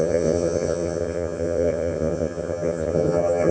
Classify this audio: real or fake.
fake